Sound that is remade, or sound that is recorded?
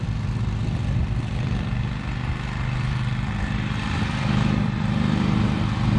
remade